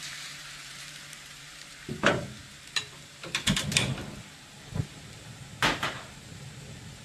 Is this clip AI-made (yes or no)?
yes